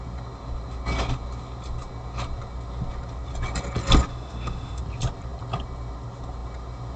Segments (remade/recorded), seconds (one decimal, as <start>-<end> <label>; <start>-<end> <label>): 0.0-4.1 recorded; 4.1-4.8 remade; 4.8-7.0 recorded